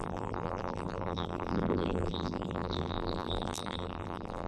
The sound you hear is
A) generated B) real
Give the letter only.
A